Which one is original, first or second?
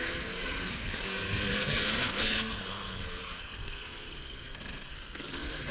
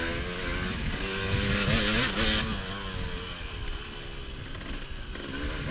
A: second